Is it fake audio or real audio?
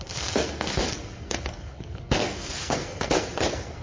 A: fake